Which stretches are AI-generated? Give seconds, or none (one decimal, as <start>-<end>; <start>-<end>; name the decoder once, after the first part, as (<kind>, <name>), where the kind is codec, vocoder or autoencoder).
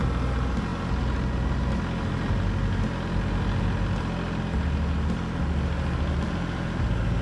none